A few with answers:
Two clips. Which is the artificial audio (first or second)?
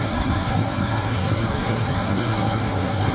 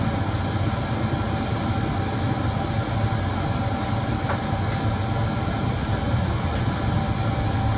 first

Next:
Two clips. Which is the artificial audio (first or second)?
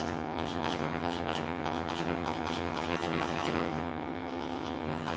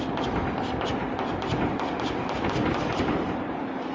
first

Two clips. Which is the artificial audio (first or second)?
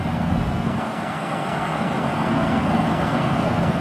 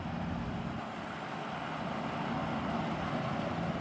first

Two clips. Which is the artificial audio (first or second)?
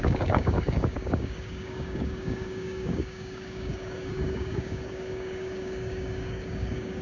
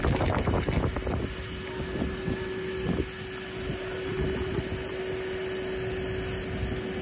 first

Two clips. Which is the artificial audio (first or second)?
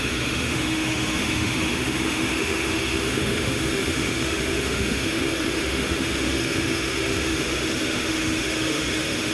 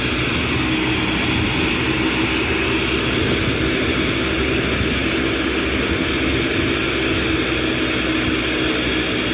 first